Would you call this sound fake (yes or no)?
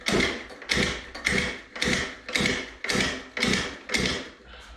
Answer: no